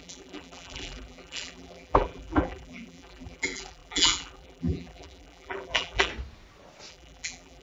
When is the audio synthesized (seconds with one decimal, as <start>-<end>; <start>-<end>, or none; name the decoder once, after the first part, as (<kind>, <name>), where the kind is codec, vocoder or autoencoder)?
0.0-6.1 (vocoder, BigVGAN v2); 6.9-7.6